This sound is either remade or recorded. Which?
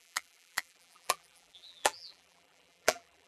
remade